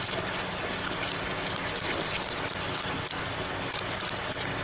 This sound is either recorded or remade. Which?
recorded